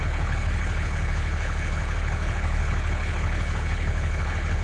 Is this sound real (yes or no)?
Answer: no